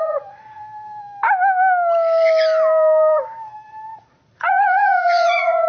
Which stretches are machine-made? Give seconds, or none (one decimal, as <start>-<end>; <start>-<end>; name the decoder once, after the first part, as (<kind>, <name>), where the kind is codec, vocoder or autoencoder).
0.0-0.6 (vocoder, Vocos); 3.9-5.7